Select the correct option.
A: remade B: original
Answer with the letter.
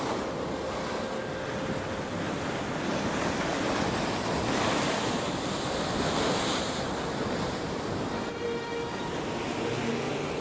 B